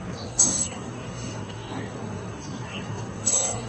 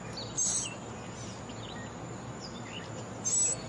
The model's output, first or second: first